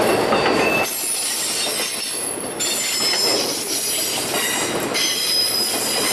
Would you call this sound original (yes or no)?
yes